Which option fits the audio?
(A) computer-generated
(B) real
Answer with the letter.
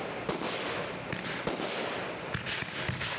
B